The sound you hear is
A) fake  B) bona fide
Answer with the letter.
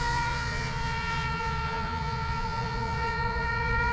A